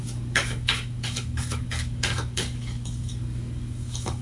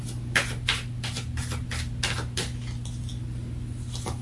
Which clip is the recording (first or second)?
second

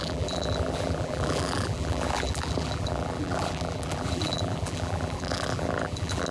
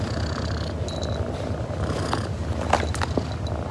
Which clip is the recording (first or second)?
second